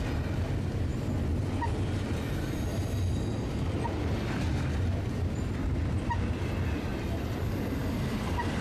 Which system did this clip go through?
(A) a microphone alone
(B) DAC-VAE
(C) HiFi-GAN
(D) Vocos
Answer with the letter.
A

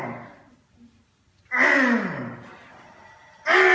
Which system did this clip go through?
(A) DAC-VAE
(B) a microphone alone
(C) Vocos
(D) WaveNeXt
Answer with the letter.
B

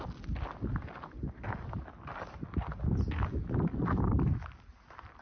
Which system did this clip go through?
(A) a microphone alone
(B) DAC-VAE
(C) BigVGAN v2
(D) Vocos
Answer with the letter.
A